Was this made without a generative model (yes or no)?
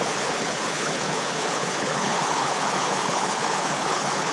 no